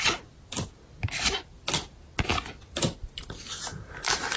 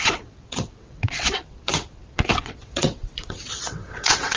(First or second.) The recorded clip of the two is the first